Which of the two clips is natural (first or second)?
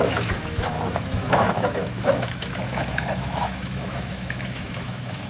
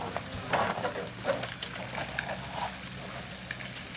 second